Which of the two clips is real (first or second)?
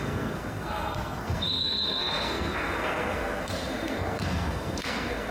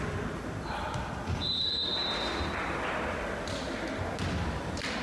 second